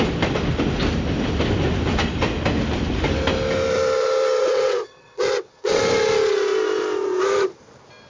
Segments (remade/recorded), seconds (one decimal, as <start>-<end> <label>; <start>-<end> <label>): 0.0-4.4 recorded; 4.4-5.8 remade; 5.8-8.1 recorded